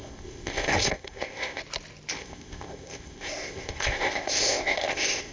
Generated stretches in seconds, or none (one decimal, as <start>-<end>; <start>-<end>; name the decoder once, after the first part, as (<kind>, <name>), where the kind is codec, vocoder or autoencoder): 0.0-1.6 (codec, ZipCodec); 2.1-5.3